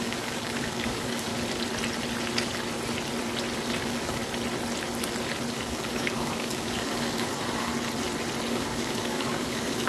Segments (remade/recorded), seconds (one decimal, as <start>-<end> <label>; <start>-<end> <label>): 0.0-1.3 remade; 1.3-3.8 recorded; 3.8-4.2 remade; 4.2-5.5 recorded; 5.5-7.7 remade; 7.7-8.5 recorded; 8.5-9.9 remade